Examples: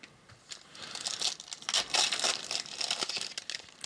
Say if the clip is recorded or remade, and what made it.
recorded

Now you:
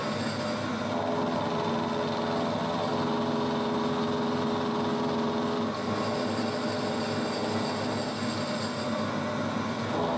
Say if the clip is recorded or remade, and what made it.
recorded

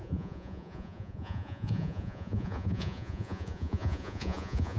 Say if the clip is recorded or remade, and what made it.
remade, vocoder, Vocos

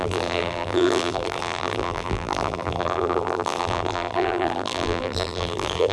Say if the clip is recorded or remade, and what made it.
remade, vocoder, BigVGAN v2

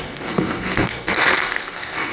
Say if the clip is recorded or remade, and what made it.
remade, codec, SNAC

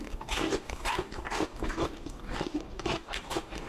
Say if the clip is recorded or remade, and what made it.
remade, codec, DAC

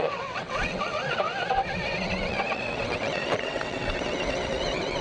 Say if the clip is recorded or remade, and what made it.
remade, vocoder, WaveNeXt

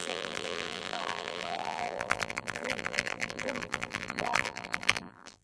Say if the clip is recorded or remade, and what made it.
remade, vocoder, BigVGAN v2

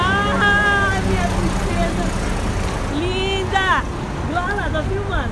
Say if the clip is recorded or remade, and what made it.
recorded